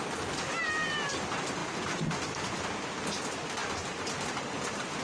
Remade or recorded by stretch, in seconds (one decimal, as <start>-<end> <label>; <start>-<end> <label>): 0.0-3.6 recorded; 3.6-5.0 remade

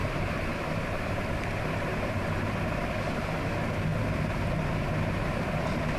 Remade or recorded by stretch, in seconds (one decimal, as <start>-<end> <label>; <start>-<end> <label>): 0.0-2.3 remade; 2.3-6.0 recorded

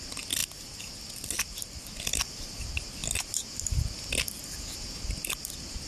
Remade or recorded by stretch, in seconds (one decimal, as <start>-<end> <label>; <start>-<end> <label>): 0.0-3.0 recorded; 3.0-3.7 remade; 3.7-5.9 recorded

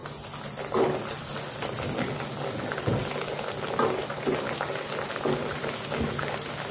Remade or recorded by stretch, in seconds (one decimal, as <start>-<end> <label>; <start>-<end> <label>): 0.0-6.7 recorded

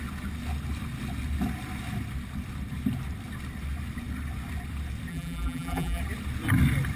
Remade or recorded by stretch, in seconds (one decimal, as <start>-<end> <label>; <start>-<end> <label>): 0.0-5.1 recorded; 5.1-6.0 remade; 6.0-7.0 recorded